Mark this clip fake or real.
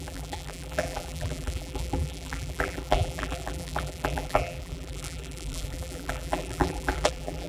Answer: fake